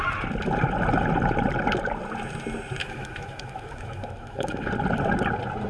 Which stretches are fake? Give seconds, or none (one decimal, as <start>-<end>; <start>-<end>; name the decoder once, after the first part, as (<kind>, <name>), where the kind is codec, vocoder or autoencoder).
2.8-4.7 (autoencoder, DAC-VAE)

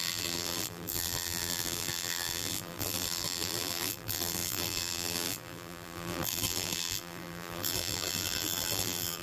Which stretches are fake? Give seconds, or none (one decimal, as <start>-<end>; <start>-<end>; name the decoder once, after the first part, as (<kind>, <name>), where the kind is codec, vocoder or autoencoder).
0.0-9.2 (vocoder, BigVGAN v2)

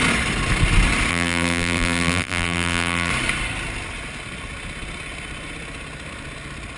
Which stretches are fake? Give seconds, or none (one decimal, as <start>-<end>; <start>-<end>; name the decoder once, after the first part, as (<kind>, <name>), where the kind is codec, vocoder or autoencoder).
1.1-3.1 (vocoder, BigVGAN v2)

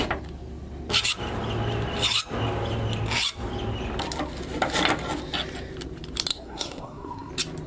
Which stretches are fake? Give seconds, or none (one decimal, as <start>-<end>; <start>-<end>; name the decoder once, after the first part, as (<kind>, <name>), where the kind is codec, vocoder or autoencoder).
6.3-7.3 (codec, SNAC)